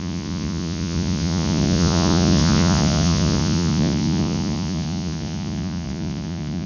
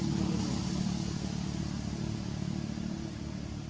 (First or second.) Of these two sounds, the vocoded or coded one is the first